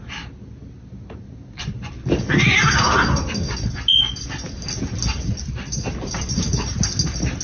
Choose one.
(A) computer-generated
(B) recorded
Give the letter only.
B